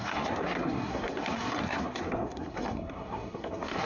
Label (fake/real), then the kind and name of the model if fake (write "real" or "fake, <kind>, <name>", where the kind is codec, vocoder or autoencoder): fake, codec, SNAC